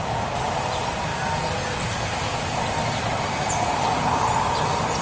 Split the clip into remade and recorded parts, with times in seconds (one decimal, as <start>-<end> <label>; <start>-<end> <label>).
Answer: 0.0-5.0 recorded

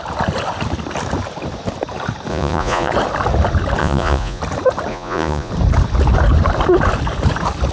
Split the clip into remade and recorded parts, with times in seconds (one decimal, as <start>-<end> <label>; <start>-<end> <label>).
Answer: 0.0-2.3 recorded; 2.3-2.9 remade; 2.9-3.8 recorded; 3.8-4.4 remade; 4.4-4.9 recorded; 4.9-5.5 remade; 5.5-7.7 recorded

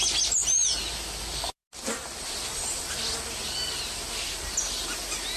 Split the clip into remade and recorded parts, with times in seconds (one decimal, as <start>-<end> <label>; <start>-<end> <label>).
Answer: 0.0-5.4 recorded

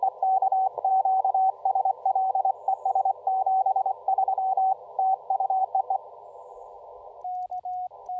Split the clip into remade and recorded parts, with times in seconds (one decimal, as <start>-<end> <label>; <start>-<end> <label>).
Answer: 0.0-8.2 recorded

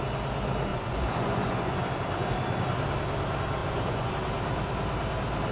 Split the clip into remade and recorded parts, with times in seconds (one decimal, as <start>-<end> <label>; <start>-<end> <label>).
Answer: 0.0-0.7 recorded; 0.7-1.8 remade; 1.8-3.6 recorded; 3.6-4.1 remade; 4.1-5.5 recorded

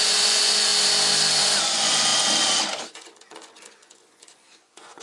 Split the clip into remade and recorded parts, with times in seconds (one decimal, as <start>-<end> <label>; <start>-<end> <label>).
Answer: 0.0-0.7 remade; 0.7-1.6 recorded; 1.6-2.1 remade; 2.1-2.9 recorded; 2.9-5.0 remade